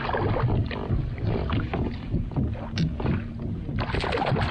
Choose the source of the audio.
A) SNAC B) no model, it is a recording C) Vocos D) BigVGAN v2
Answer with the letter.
B